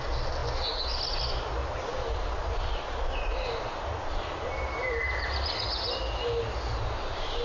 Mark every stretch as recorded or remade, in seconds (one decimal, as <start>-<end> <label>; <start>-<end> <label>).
0.0-7.4 recorded